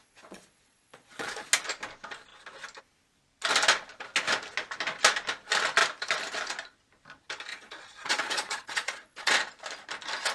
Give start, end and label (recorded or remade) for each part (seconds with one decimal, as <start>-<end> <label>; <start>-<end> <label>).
0.0-1.5 remade; 1.5-7.5 recorded; 7.5-9.3 remade; 9.3-10.3 recorded